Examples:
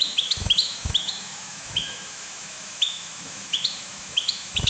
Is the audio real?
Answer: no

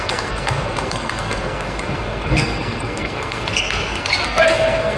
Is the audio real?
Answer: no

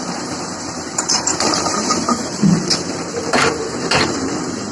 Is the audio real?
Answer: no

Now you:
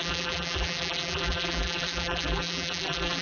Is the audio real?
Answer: no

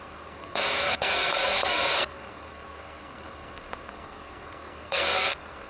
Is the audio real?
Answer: no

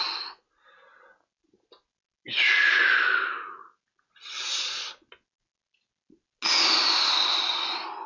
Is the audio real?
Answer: yes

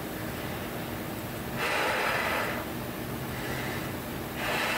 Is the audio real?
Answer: yes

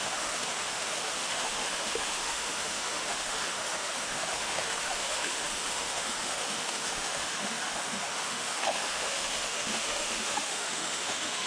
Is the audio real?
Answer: no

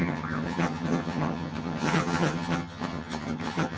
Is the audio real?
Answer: no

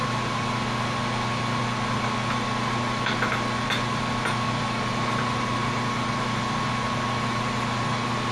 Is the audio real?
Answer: yes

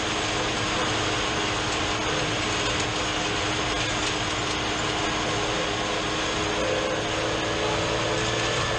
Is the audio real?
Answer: yes